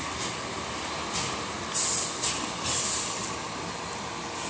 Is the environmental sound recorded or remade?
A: recorded